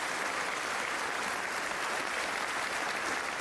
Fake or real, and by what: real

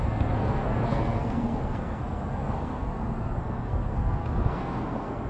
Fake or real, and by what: fake, codec, SNAC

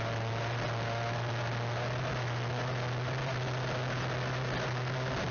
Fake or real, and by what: real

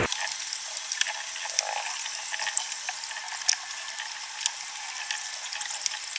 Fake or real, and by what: real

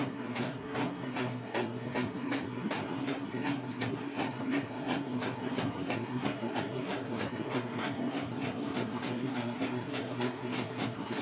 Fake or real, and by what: fake, codec, SNAC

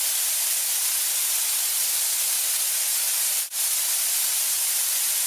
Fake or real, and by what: real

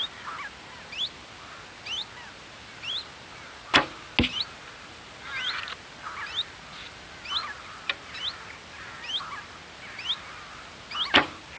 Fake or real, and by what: real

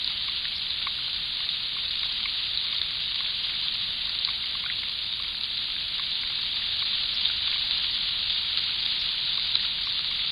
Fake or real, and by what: real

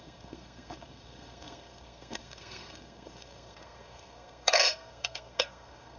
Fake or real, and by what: fake, codec, SNAC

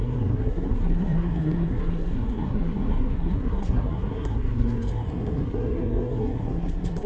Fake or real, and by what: fake, codec, SNAC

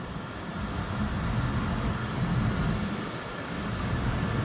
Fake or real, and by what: real